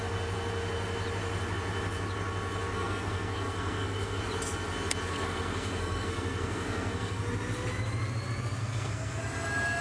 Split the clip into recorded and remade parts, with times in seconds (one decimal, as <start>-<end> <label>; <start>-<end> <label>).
0.0-2.7 recorded; 2.7-4.2 remade; 4.2-5.1 recorded; 5.1-7.2 remade; 7.2-8.6 recorded; 8.6-9.2 remade; 9.2-9.8 recorded